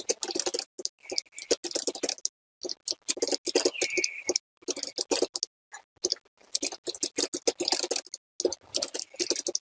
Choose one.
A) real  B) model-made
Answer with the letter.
A